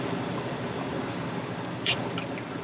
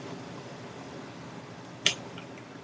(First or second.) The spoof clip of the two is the first